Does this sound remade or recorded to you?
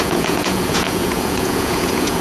remade